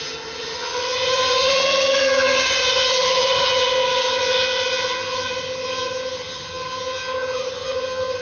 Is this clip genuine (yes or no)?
no